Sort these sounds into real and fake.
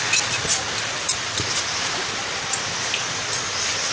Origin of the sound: real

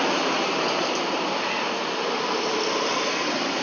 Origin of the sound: real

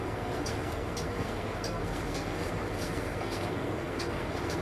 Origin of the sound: fake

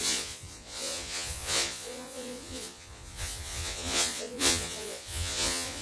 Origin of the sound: fake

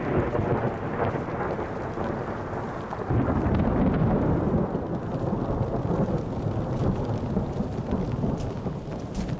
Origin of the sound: real